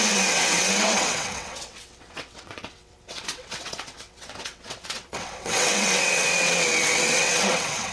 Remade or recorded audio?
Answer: remade